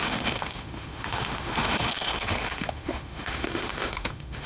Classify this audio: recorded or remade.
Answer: remade